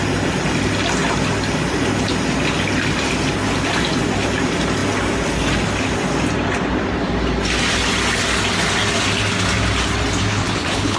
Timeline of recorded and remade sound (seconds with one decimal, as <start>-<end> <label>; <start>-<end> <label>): 0.0-10.3 recorded; 10.3-11.0 remade